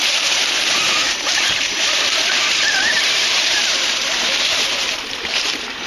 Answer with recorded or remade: remade